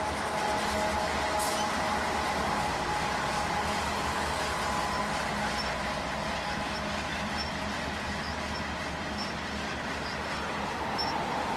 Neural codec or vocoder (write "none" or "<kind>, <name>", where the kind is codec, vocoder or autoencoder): none